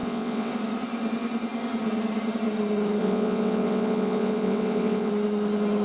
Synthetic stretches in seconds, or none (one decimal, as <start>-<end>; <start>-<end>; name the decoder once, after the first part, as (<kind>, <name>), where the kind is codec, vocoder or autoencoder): 0.0-0.5 (vocoder, WaveNeXt); 3.0-5.1